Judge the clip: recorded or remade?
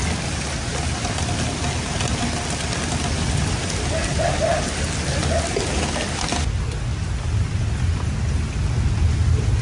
recorded